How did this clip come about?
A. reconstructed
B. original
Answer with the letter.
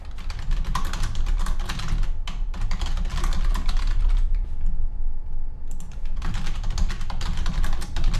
B